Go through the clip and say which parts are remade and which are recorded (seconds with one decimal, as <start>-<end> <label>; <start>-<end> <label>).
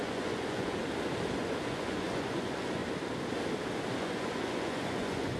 0.0-0.8 remade; 0.8-1.4 recorded; 1.4-2.8 remade; 2.8-4.0 recorded; 4.0-5.4 remade